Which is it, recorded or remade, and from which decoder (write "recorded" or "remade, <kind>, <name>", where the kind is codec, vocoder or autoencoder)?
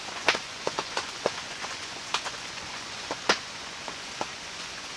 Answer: remade, vocoder, Vocos